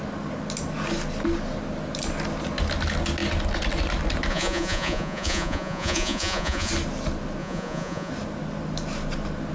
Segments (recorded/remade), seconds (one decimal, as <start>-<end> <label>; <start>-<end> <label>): 0.0-4.3 recorded; 4.3-6.7 remade; 6.7-7.4 recorded; 7.4-8.1 remade; 8.1-9.5 recorded